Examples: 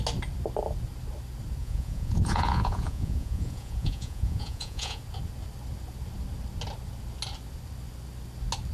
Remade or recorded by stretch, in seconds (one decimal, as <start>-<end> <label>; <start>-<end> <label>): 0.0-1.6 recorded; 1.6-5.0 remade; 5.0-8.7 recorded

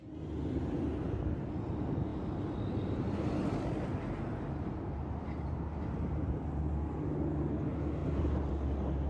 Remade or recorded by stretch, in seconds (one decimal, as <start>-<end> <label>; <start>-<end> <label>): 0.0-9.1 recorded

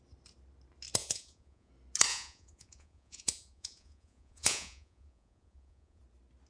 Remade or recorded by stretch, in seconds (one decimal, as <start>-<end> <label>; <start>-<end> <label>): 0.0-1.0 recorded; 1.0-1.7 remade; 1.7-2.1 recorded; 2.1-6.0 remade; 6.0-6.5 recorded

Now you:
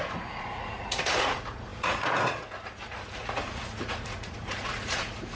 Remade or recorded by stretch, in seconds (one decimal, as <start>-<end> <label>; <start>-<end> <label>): 0.0-5.4 remade

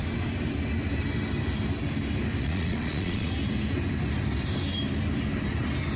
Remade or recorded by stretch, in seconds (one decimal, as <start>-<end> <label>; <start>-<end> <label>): 0.0-2.4 recorded; 2.4-3.3 remade; 3.3-6.0 recorded